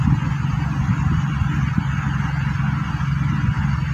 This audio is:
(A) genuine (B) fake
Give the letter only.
A